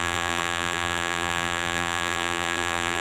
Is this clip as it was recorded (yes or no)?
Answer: no